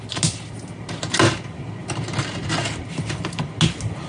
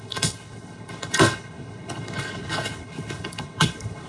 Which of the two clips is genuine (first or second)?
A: first